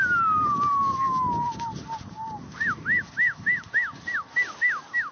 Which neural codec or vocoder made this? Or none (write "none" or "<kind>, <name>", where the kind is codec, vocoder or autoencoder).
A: none